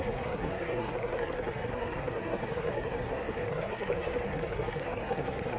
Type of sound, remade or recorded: remade